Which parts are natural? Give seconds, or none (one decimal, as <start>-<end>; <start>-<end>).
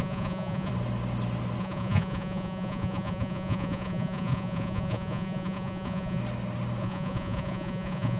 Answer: 0.7-1.6; 6.2-6.8